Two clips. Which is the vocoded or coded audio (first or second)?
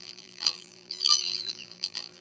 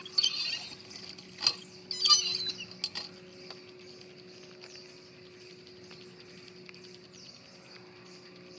first